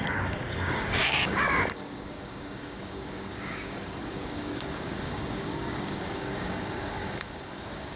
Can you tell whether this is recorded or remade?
remade